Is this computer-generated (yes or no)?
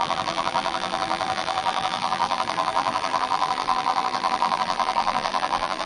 yes